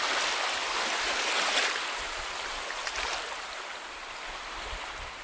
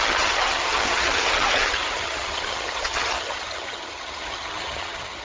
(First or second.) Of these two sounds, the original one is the first